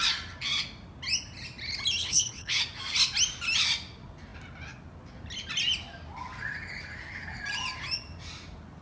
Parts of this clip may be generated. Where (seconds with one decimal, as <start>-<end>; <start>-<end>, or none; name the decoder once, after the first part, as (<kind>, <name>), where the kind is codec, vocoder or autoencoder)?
2.0-2.6 (codec, HILCodec)